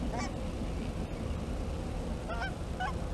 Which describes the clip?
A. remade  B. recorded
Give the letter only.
B